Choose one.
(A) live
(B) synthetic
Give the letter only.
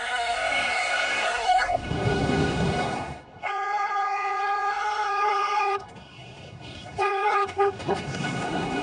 B